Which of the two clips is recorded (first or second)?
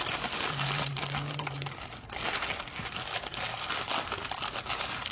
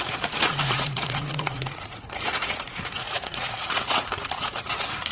first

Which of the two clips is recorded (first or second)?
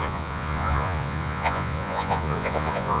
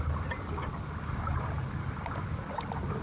second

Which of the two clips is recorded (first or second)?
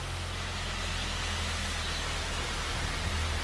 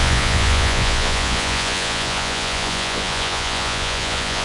first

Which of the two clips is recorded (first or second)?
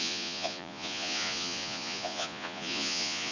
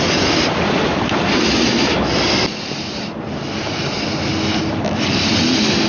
second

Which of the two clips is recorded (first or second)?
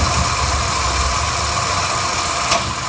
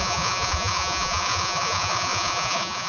first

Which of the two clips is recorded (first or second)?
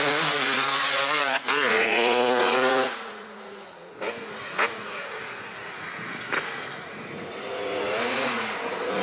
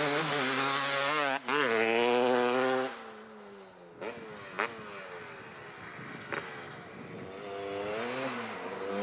second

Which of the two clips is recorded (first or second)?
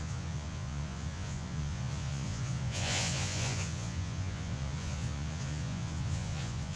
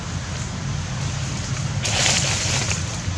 second